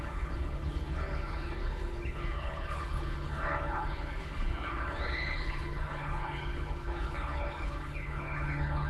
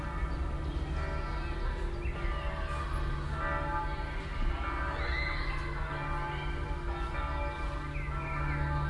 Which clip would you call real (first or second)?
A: second